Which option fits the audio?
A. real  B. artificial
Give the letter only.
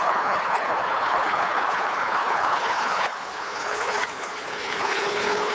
B